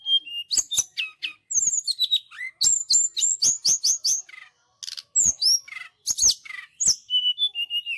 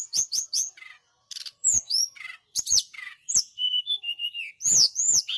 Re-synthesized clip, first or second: second